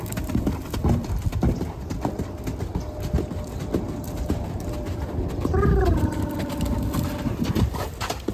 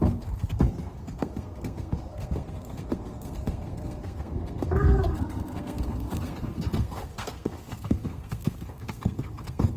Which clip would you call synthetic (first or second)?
second